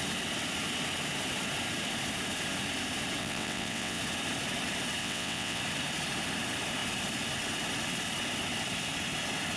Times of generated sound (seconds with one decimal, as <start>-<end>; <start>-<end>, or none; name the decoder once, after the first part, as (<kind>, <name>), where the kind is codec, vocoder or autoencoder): 3.2-4.0 (vocoder, WaveNeXt); 5.0-5.6